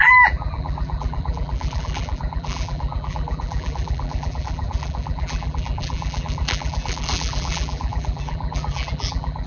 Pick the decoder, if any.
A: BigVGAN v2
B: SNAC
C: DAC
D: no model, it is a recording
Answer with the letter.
A